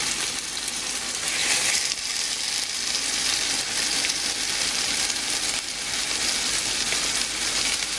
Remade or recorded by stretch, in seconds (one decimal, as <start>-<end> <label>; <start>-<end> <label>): 0.0-8.0 recorded